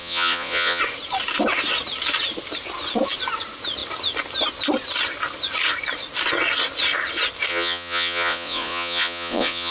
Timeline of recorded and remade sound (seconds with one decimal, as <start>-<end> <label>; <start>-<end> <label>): 0.0-0.8 remade; 0.8-7.5 recorded; 7.5-9.7 remade